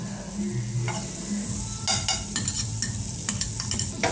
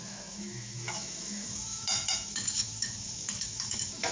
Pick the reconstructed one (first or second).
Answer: second